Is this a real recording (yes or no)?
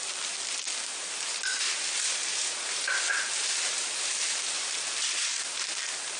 yes